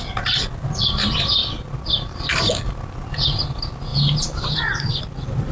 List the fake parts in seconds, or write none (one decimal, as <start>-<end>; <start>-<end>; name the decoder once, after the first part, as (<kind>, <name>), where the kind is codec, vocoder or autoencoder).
3.9-5.0 (vocoder, BigVGAN v2)